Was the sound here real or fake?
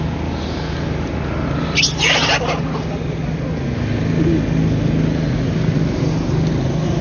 real